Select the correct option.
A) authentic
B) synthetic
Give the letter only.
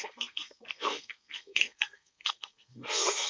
B